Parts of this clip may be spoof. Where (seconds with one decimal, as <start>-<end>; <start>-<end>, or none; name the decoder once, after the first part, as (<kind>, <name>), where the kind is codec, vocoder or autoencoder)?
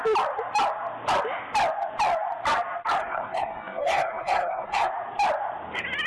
3.0-4.9 (codec, SNAC)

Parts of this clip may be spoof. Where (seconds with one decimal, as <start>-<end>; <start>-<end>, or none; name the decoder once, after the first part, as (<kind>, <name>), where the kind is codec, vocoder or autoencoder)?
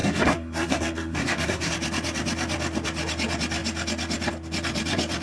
0.0-1.7 (codec, SNAC)